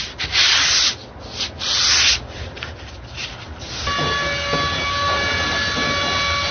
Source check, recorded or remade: recorded